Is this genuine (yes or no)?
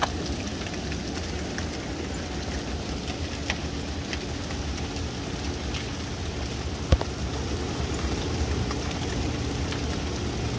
yes